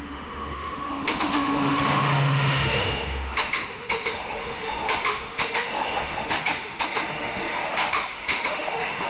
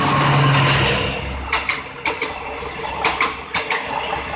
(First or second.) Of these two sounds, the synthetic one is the first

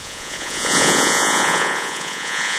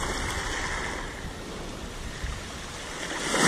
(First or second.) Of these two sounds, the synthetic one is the first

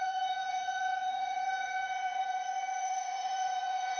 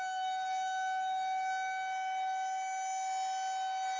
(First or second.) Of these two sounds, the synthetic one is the first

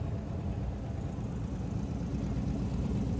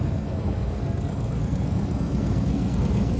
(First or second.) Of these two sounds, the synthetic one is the second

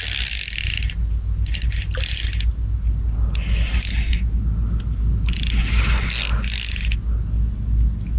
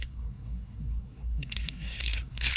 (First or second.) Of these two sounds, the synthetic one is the second